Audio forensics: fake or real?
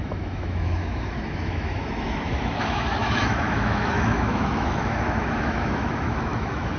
fake